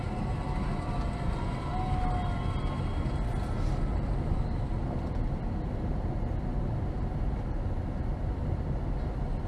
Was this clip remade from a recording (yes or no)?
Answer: no